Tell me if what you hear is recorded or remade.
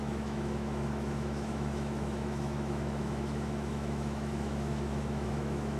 remade